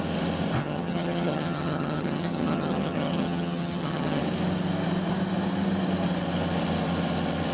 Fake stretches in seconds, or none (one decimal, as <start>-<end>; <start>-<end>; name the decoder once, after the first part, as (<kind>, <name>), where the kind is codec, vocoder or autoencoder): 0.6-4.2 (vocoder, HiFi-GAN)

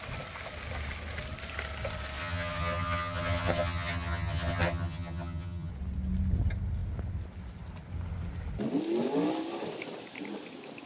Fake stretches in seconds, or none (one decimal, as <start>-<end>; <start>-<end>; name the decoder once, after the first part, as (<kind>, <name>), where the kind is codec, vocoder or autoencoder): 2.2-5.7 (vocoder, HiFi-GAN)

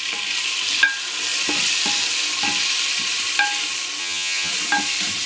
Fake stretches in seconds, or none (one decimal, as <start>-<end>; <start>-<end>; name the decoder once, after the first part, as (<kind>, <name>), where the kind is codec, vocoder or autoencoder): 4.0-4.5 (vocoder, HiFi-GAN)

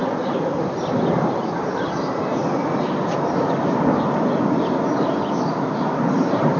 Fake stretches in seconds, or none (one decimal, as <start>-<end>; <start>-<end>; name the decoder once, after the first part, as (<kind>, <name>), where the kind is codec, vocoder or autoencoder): none

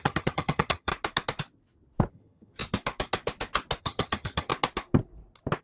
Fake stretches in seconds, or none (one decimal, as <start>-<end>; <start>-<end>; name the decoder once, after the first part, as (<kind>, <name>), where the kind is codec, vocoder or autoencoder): 0.0-0.9 (vocoder, HiFi-GAN); 2.1-2.6; 3.8-4.5

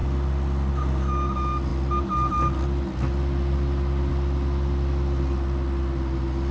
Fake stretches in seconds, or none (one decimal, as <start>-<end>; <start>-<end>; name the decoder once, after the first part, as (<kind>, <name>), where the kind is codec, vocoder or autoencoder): none